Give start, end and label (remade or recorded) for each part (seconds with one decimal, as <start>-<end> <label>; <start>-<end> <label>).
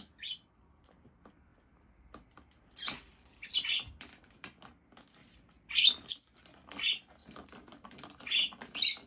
0.0-1.5 recorded; 1.5-4.4 remade; 4.4-9.1 recorded